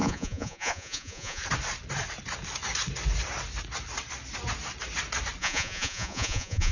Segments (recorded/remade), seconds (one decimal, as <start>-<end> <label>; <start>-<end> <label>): 0.0-1.4 remade; 1.4-5.4 recorded; 5.4-6.7 remade